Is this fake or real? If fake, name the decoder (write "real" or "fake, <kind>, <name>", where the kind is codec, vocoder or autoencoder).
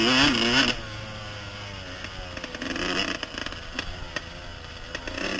real